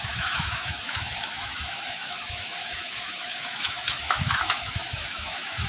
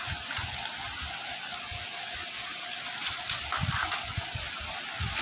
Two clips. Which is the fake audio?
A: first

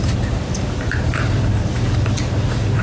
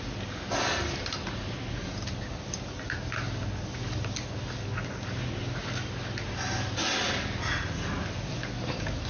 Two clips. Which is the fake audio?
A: first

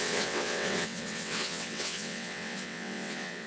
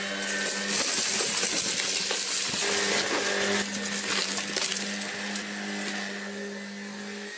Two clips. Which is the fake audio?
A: first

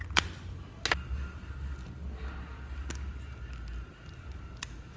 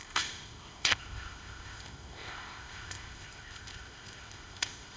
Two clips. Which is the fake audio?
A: second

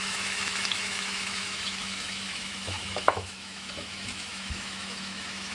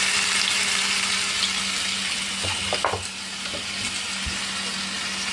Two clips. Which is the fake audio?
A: first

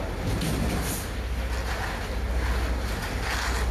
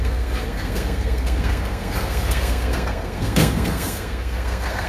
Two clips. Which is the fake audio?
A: second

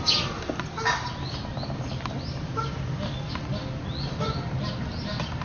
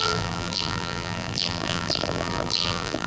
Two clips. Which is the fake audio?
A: second